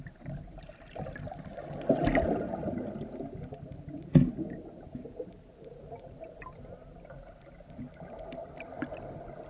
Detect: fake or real real